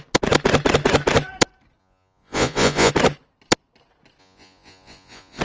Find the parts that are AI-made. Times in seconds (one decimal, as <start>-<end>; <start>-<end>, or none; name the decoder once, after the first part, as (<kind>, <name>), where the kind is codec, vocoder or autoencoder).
1.8-2.9 (vocoder, Vocos); 4.2-5.4